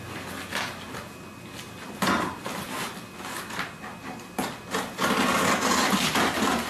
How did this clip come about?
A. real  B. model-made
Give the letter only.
A